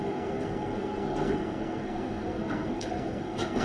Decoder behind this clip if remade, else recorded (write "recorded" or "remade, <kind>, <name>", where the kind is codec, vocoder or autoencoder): remade, codec, SNAC